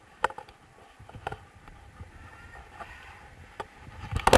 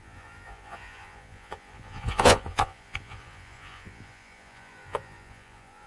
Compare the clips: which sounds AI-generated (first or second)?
second